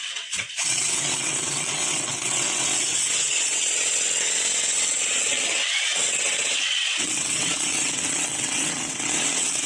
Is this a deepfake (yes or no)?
yes